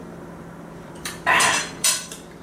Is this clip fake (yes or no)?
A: yes